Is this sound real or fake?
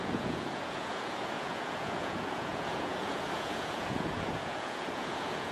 fake